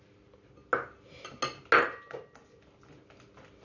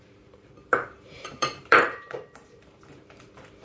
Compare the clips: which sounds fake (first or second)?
second